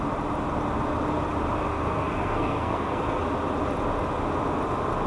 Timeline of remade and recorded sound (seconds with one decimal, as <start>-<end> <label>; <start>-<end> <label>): 0.0-1.7 recorded; 1.7-3.2 remade; 3.2-5.1 recorded